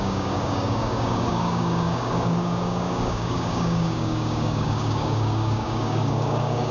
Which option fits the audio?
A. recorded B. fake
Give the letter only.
B